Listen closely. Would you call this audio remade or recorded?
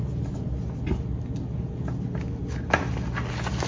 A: recorded